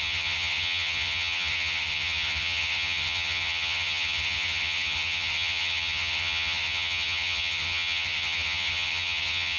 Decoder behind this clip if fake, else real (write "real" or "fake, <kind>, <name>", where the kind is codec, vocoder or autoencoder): fake, vocoder, HiFi-GAN